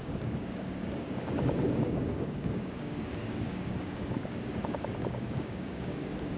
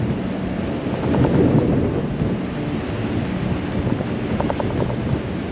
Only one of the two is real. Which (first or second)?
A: second